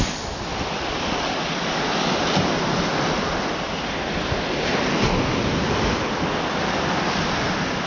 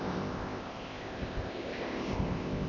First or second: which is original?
first